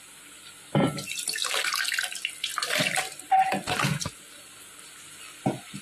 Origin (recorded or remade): recorded